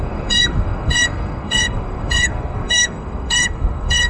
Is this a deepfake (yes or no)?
yes